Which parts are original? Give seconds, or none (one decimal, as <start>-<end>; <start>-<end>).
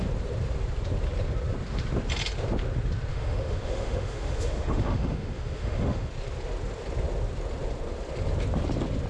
0.0-3.1; 6.1-9.1